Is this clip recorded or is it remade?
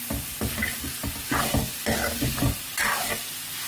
recorded